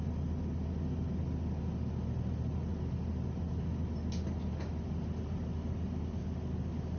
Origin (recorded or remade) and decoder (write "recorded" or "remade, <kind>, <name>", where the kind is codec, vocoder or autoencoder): recorded